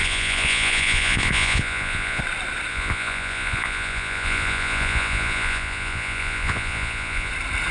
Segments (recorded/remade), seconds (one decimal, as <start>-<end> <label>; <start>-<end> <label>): 0.0-2.2 remade; 2.2-2.7 recorded; 2.7-7.3 remade; 7.3-7.7 recorded